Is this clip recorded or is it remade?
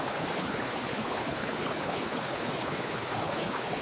remade